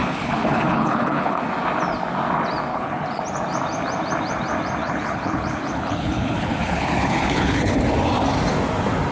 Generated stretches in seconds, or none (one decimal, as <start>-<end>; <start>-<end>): 0.0-1.4; 2.7-3.2; 4.8-7.8